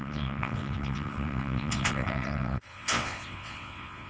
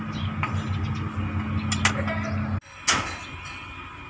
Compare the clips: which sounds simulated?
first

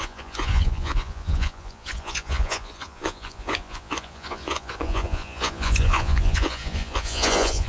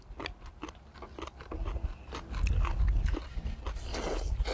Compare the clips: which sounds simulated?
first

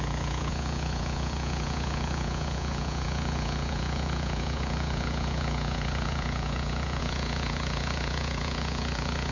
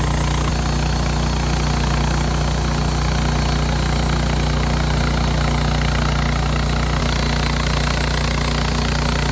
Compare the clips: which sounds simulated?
first